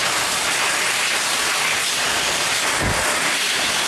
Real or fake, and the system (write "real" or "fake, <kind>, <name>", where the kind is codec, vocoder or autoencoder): real